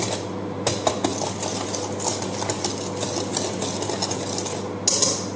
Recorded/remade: recorded